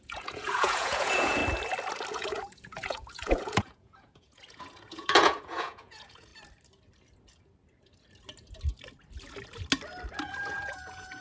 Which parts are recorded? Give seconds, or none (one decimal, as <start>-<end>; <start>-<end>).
1.4-2.1; 6.3-10.2